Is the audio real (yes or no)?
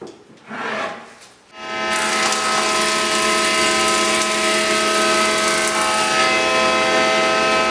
yes